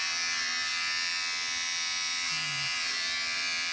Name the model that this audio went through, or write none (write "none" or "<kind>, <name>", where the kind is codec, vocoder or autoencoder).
vocoder, BigVGAN v2